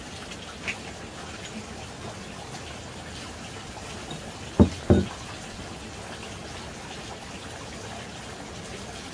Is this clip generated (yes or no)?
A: no